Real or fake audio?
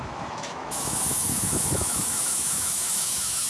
fake